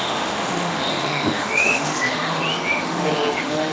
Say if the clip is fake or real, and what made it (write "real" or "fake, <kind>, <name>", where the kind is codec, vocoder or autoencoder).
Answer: fake, autoencoder, DAC-VAE